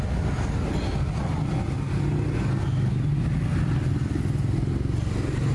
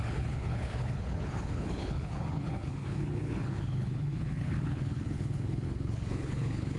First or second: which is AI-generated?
second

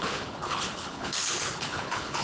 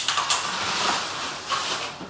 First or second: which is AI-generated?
first